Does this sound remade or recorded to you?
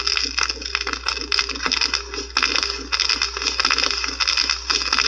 recorded